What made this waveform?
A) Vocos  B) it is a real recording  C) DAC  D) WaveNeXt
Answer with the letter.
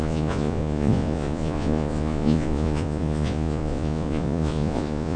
A